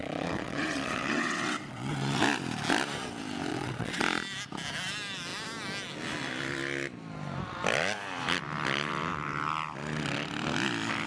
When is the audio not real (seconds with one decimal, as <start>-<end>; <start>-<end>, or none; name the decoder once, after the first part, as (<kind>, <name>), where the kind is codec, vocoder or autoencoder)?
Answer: 0.0-2.2 (vocoder, WaveNeXt); 3.5-4.0